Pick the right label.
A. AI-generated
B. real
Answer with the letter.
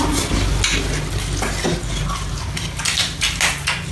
B